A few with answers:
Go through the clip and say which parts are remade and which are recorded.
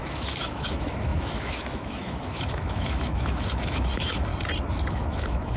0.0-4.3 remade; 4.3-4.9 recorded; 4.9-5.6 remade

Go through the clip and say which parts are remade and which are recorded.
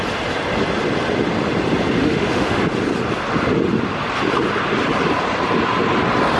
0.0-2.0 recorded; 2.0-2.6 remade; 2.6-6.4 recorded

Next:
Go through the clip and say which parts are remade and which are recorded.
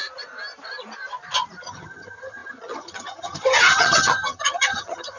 0.0-1.6 recorded; 1.6-5.2 remade